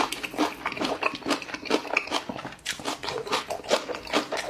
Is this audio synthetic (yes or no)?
no